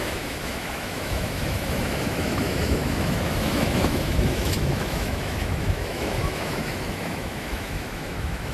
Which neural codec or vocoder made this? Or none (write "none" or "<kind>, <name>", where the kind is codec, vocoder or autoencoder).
autoencoder, DAC-VAE